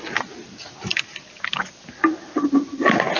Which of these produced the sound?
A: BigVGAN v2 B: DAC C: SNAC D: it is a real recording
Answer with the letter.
D